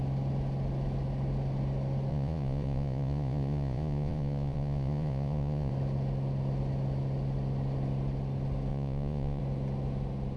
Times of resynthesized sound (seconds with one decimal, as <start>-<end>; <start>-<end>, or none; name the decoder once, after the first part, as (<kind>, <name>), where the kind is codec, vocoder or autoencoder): 2.1-5.7 (vocoder, Vocos); 8.7-9.4